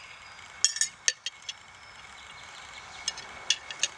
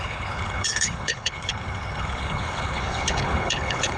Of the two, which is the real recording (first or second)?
first